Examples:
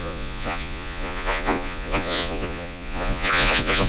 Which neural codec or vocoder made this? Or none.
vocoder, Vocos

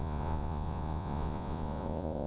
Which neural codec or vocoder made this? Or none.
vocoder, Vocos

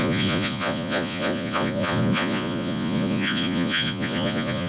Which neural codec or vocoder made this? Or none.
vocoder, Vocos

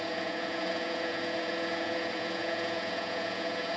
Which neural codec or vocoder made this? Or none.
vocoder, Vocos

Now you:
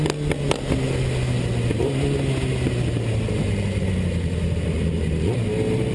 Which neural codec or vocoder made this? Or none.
none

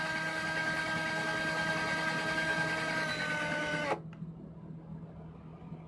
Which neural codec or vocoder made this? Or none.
none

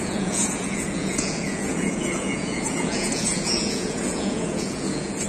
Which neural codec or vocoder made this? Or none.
vocoder, Vocos